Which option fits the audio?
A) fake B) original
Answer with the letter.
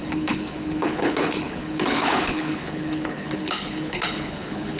A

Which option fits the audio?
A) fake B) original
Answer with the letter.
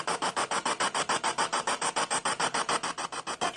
B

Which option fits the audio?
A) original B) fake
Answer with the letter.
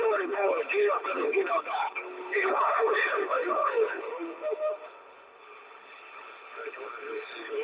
B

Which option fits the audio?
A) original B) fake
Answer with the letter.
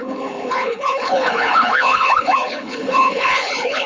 B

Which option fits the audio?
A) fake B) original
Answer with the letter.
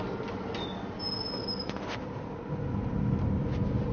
B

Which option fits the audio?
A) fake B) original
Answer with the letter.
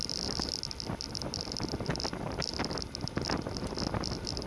B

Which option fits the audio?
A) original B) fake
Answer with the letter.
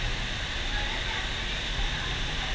A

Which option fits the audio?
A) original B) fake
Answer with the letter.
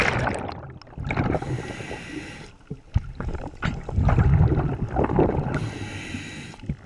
A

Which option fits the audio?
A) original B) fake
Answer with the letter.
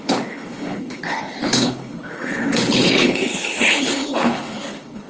B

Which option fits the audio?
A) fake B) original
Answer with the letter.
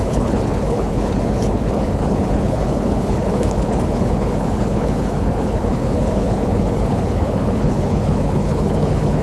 A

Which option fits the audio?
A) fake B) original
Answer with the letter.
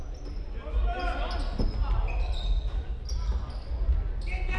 B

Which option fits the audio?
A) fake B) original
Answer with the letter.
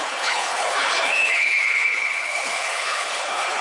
A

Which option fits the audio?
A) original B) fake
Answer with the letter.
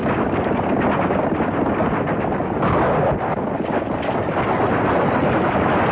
A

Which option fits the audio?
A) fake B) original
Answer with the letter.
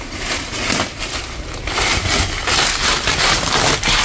B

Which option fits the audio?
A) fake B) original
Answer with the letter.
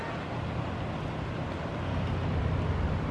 B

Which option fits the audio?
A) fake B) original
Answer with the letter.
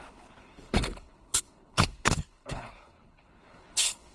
A